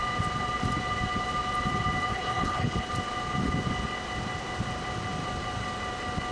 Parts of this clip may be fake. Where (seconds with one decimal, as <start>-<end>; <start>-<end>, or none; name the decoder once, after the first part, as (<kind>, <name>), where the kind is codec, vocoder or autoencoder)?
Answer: 2.1-2.9 (codec, HILCodec)